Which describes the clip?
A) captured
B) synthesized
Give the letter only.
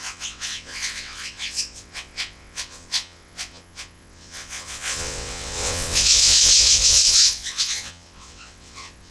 B